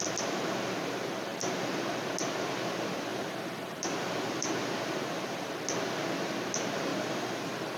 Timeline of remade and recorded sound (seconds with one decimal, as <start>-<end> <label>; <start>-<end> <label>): 0.0-3.1 recorded; 3.1-5.5 remade; 5.5-6.9 recorded; 6.9-7.8 remade